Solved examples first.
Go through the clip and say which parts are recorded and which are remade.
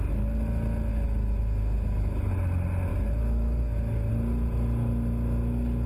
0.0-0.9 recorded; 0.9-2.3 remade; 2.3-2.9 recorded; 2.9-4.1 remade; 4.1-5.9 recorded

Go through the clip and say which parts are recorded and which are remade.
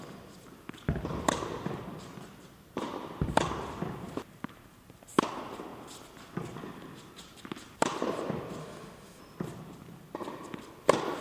0.0-8.6 recorded; 8.6-9.2 remade; 9.2-11.2 recorded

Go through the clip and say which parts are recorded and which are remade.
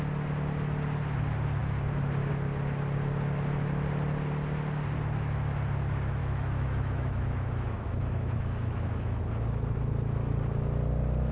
0.0-6.2 recorded; 6.2-9.2 remade; 9.2-11.3 recorded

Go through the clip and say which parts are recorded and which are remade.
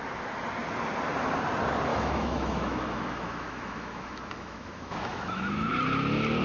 0.0-1.9 recorded; 1.9-5.7 remade; 5.7-6.4 recorded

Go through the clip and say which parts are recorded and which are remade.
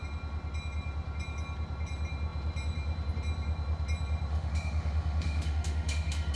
0.0-4.3 recorded; 4.3-6.3 remade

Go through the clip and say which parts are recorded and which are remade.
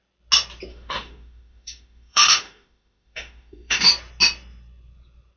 0.0-0.7 recorded; 0.7-3.9 remade; 3.9-5.4 recorded